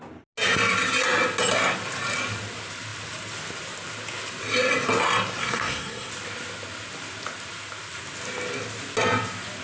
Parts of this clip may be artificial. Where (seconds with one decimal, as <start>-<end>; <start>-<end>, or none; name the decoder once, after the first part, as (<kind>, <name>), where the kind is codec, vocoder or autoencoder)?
5.4-6.1 (codec, SNAC)